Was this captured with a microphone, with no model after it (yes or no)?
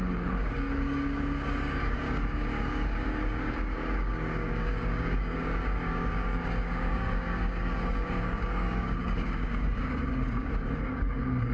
no